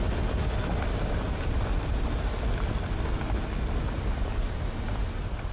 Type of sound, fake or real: real